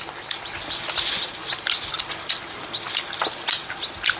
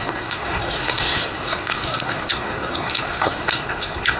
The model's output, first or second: second